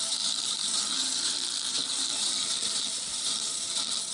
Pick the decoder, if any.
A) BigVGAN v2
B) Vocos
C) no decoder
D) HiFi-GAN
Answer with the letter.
A